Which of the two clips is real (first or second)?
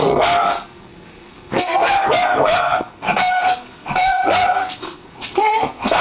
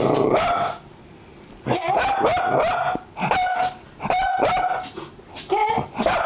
second